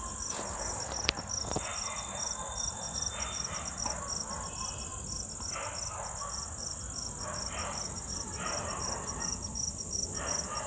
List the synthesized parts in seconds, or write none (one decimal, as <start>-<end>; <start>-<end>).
4.9-6.0